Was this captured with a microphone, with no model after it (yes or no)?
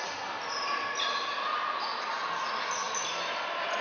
yes